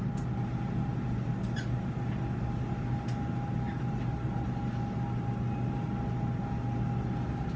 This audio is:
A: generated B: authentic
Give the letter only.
B